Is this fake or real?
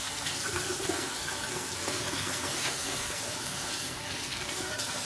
fake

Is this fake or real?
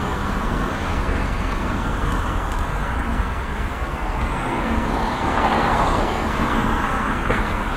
fake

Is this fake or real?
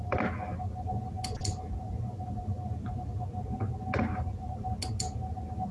real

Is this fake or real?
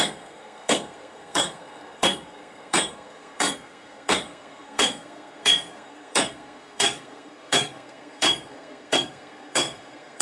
fake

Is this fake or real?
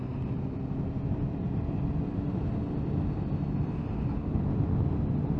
real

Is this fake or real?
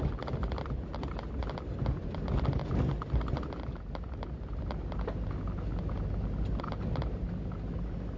real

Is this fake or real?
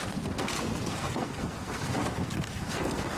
fake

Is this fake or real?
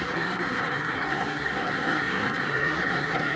fake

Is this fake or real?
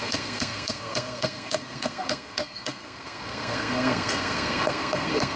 fake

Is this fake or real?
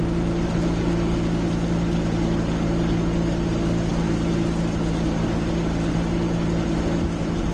real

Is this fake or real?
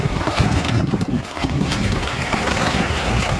fake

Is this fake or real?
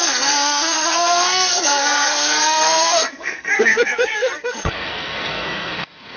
fake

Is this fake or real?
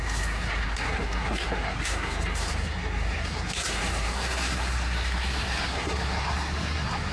fake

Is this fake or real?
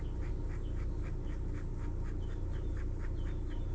real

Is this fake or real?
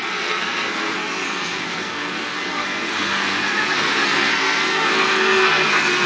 fake